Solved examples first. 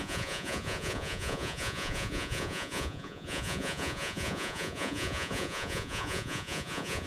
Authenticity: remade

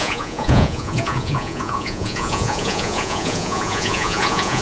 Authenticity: remade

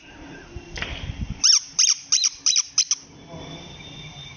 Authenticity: recorded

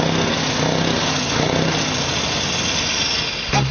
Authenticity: recorded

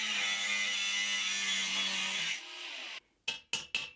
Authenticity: recorded